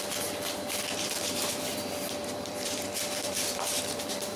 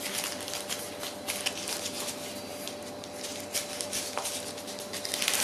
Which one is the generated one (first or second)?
first